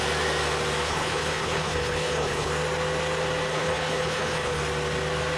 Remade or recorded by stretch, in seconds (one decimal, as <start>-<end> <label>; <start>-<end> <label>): 0.0-0.8 recorded; 0.8-2.5 remade; 2.5-3.5 recorded; 3.5-4.6 remade; 4.6-5.4 recorded